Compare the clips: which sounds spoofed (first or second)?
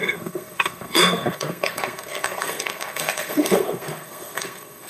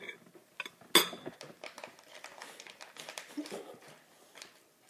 first